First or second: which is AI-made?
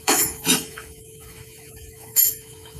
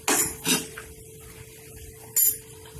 first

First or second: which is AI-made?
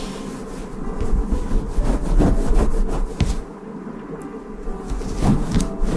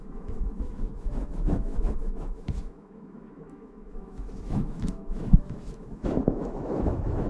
second